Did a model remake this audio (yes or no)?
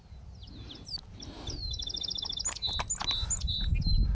no